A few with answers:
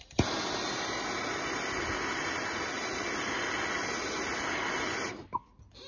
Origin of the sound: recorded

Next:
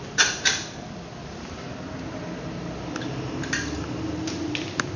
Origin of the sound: recorded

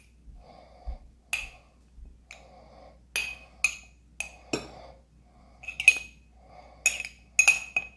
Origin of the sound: recorded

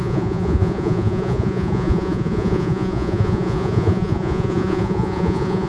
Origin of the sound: remade